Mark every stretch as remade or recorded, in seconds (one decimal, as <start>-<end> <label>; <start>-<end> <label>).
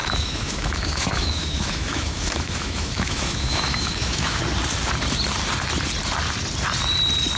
0.0-4.4 remade; 4.4-7.4 recorded